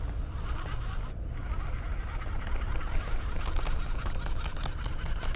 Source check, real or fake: real